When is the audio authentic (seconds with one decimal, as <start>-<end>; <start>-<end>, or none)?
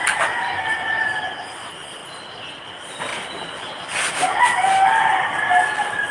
0.0-6.1